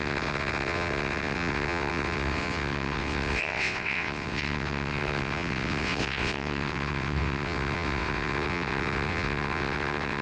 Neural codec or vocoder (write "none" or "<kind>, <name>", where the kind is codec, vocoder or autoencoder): vocoder, WaveNeXt